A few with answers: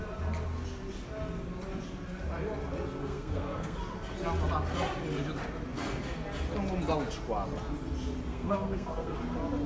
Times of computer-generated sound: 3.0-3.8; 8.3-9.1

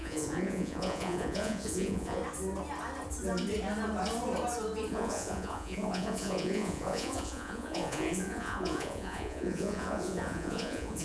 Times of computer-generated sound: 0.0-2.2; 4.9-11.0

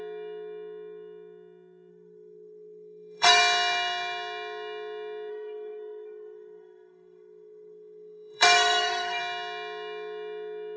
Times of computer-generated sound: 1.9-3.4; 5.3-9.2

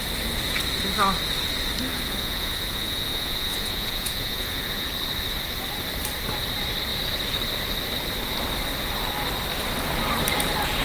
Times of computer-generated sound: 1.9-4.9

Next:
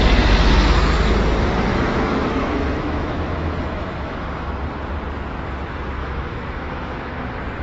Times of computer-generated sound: 1.7-4.5; 6.0-7.1

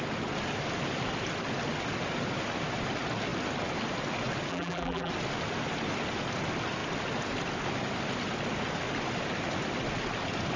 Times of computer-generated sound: 4.5-5.1

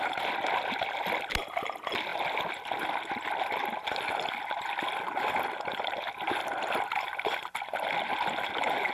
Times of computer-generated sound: none